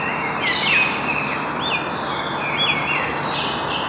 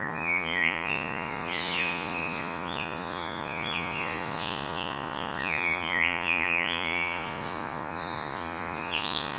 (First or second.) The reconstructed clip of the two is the second